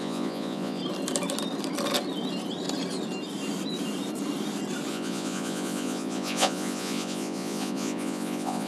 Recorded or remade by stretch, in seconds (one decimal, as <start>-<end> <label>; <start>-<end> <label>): 0.0-0.8 remade; 0.8-4.9 recorded; 4.9-8.7 remade